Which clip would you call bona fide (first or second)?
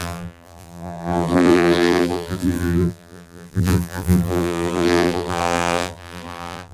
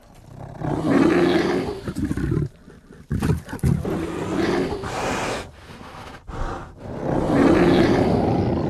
second